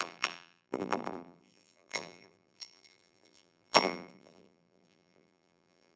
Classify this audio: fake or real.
fake